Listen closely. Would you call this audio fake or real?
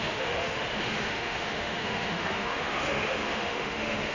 fake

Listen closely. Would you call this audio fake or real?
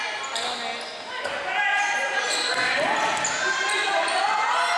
real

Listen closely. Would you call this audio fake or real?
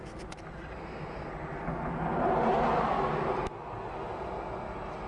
real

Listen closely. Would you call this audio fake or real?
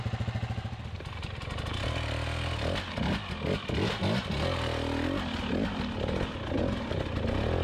real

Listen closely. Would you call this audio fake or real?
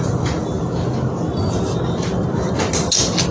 real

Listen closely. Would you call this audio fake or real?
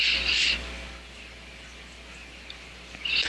real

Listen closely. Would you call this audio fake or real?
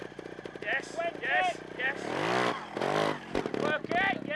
real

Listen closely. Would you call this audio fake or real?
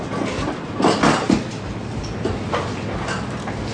real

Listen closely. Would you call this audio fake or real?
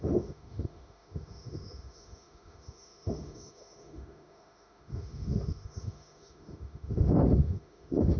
fake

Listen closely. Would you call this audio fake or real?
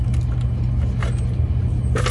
real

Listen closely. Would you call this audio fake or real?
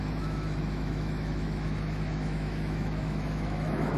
fake